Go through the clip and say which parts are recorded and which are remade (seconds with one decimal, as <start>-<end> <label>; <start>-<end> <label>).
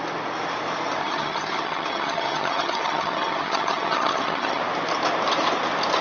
0.0-1.0 recorded; 1.0-4.6 remade; 4.6-6.0 recorded